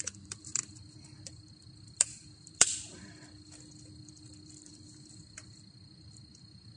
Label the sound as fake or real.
fake